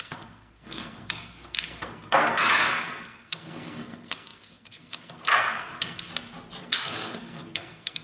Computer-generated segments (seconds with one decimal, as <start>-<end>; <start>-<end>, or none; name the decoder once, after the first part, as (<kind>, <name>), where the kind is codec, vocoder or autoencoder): 0.0-6.1 (codec, SNAC); 6.6-8.0